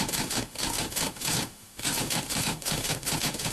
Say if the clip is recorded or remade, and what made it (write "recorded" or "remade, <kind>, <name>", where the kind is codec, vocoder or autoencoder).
remade, autoencoder, DAC-VAE